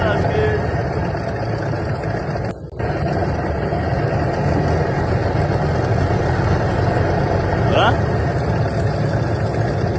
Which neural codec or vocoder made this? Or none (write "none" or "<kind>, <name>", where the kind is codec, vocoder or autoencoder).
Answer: none